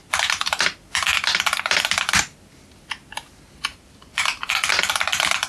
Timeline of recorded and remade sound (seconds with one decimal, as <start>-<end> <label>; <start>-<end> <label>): 0.0-3.7 recorded; 3.7-4.7 remade; 4.7-5.5 recorded